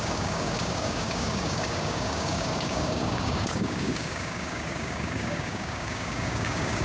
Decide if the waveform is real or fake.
fake